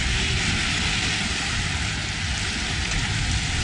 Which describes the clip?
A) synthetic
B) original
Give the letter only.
B